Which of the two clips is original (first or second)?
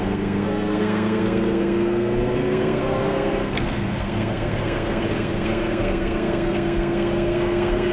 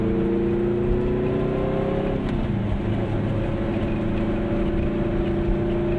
second